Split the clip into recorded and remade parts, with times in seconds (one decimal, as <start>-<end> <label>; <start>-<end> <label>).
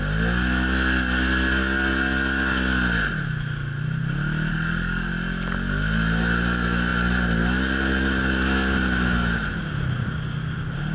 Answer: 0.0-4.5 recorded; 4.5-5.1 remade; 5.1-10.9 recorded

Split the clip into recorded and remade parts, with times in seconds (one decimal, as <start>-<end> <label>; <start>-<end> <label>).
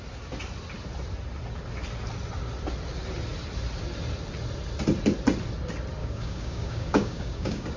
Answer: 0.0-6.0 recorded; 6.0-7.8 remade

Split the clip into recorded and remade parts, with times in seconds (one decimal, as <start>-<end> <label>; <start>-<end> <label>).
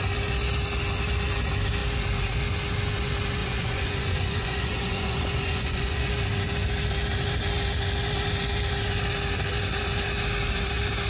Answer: 0.0-3.4 recorded; 3.4-6.1 remade; 6.1-11.1 recorded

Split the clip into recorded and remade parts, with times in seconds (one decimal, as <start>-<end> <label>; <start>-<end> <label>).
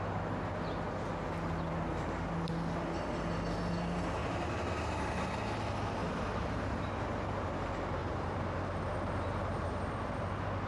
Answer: 0.0-4.2 recorded; 4.2-5.1 remade; 5.1-6.0 recorded; 6.0-6.9 remade; 6.9-8.0 recorded; 8.0-9.9 remade; 9.9-10.7 recorded